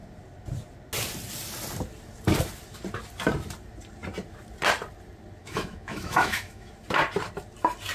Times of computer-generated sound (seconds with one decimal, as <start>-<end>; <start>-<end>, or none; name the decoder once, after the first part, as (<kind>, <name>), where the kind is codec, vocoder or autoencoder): 5.4-6.7 (autoencoder, DAC-VAE)